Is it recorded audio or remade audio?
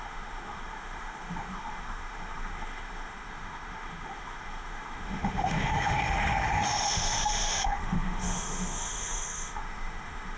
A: remade